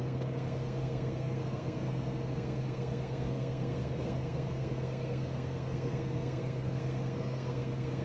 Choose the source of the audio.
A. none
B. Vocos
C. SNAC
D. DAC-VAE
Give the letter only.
C